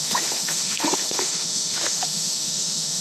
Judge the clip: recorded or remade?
remade